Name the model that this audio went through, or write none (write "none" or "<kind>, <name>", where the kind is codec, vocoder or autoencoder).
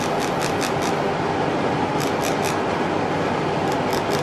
none